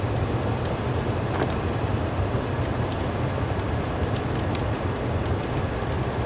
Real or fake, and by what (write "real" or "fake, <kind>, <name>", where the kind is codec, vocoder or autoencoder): real